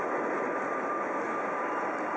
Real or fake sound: real